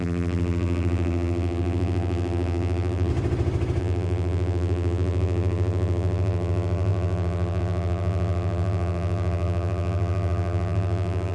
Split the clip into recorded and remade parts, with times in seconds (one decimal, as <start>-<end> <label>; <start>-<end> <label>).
0.0-3.1 remade; 3.1-3.8 recorded; 3.8-11.3 remade